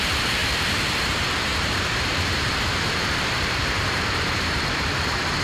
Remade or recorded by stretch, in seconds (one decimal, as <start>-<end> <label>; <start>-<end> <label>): 0.0-0.4 remade; 0.4-1.0 recorded; 1.0-5.4 remade